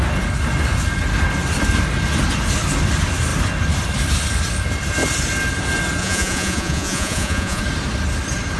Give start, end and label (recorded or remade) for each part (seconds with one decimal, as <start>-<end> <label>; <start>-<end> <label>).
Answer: 0.0-6.0 recorded; 6.0-7.6 remade; 7.6-8.6 recorded